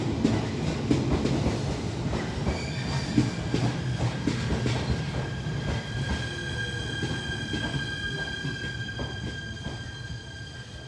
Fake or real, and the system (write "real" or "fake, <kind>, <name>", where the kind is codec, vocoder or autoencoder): real